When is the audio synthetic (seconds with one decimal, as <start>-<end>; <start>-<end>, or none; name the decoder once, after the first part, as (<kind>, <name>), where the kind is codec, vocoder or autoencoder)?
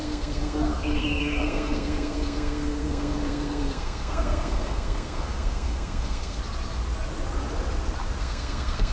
0.0-6.4 (codec, SNAC); 8.2-8.9